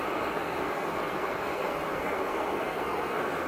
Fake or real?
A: fake